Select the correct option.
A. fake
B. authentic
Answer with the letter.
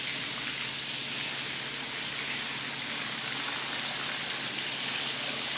B